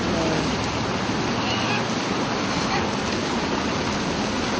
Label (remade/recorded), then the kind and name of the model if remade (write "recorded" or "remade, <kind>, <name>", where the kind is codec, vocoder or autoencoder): recorded